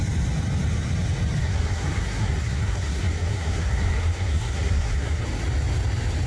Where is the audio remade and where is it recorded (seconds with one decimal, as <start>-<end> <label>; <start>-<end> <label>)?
0.0-1.4 recorded; 1.4-5.2 remade; 5.2-6.3 recorded